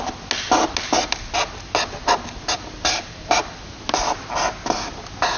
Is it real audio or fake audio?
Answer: real